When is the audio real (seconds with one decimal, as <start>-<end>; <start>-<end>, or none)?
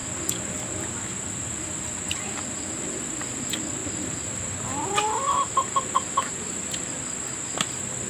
0.0-8.1